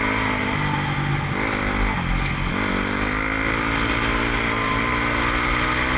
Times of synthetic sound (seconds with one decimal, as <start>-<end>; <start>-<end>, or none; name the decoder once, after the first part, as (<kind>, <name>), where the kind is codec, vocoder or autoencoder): none